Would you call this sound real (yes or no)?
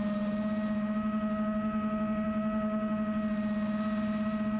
yes